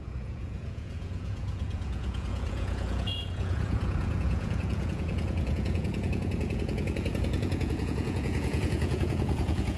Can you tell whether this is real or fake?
fake